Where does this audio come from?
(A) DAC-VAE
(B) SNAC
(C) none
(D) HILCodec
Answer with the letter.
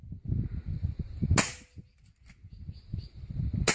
C